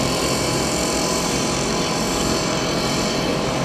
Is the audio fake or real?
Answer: fake